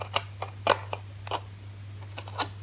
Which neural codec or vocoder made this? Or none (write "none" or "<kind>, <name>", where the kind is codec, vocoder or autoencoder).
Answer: none